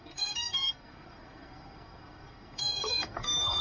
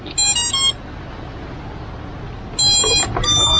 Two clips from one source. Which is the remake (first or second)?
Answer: first